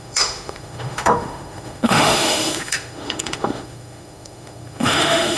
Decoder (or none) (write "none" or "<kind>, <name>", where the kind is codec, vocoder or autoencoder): autoencoder, DAC-VAE